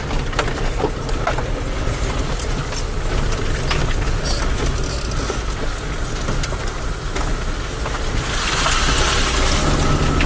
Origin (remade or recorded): recorded